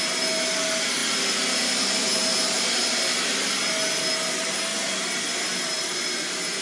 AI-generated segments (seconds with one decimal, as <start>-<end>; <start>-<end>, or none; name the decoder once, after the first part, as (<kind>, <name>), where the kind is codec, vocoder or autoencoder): 4.7-6.6 (vocoder, BigVGAN v2)